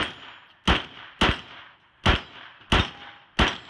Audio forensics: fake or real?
real